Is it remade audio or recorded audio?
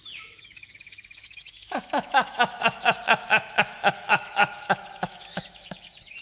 remade